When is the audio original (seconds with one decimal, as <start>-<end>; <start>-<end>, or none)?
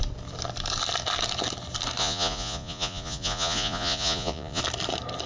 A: 0.0-2.0; 4.6-5.3